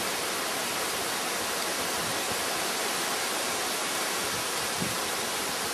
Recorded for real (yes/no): no